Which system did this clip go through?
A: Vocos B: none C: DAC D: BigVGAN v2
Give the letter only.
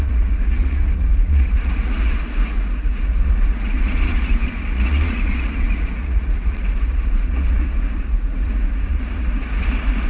A